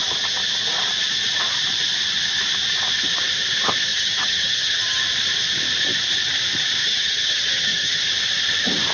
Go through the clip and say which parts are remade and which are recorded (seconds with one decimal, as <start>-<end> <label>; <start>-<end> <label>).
0.0-3.9 recorded; 3.9-5.0 remade; 5.0-6.8 recorded; 6.8-8.0 remade; 8.0-8.9 recorded